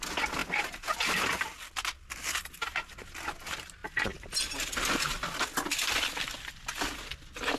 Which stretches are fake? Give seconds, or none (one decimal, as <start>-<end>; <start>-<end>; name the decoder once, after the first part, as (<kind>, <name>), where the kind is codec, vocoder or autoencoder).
0.4-2.1 (vocoder, BigVGAN v2)